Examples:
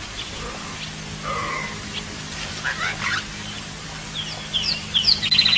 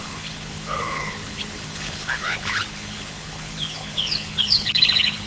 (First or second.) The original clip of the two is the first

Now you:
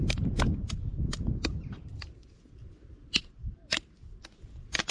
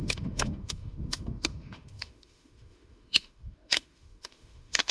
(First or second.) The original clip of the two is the first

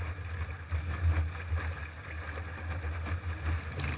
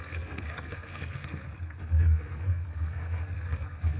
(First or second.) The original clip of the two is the first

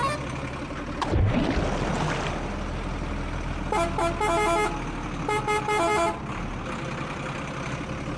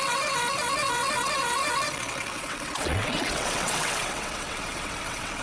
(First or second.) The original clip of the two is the first